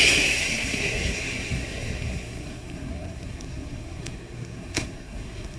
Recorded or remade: remade